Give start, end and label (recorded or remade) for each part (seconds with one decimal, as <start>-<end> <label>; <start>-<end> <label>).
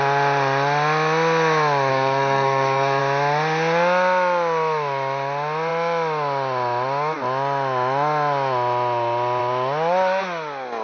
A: 0.0-1.9 recorded; 1.9-3.0 remade; 3.0-10.8 recorded